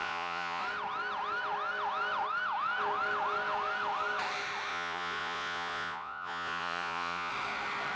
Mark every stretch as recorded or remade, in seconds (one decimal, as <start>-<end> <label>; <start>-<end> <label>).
0.0-0.6 remade; 0.6-4.7 recorded; 4.7-7.3 remade; 7.3-8.0 recorded